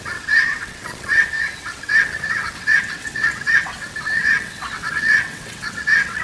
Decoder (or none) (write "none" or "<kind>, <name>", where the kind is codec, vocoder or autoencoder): vocoder, WaveNeXt